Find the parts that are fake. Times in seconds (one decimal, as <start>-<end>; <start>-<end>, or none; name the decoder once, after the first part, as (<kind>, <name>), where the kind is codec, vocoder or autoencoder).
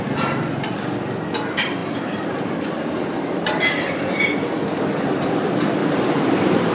1.8-4.7 (vocoder, BigVGAN v2); 5.8-6.7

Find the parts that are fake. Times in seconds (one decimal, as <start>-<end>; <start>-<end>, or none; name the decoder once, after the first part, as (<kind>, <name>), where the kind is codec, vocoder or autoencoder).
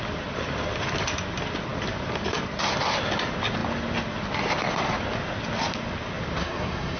6.4-7.0 (codec, SNAC)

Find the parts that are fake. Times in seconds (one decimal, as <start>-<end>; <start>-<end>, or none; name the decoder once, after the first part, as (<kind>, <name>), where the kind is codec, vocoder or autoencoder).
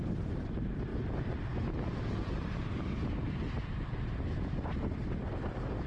none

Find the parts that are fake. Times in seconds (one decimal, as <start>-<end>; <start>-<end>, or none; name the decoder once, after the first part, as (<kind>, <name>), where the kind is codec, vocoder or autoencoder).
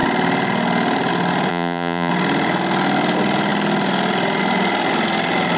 1.5-2.1 (vocoder, Vocos)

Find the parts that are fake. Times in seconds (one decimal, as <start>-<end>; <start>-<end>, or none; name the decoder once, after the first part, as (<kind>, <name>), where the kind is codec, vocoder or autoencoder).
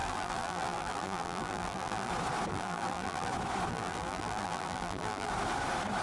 0.0-2.1 (vocoder, BigVGAN v2); 2.5-3.3; 3.7-5.3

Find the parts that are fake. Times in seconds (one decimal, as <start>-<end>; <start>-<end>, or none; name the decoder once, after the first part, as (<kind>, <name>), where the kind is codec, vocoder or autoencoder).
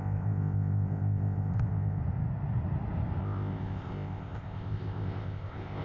0.0-2.0 (codec, ZipCodec); 3.2-5.8